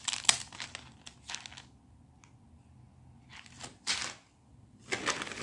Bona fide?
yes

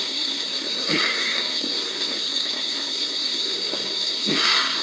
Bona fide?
no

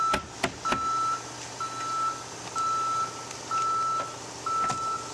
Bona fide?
yes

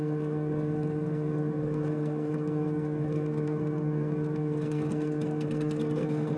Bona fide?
no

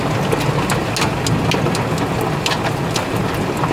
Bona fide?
yes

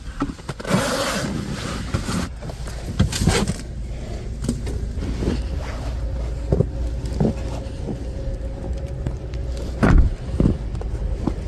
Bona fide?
yes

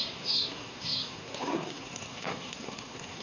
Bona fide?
no